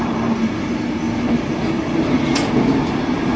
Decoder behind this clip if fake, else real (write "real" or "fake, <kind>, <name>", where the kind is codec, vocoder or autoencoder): real